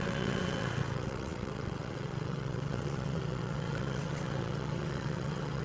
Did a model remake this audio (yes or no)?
yes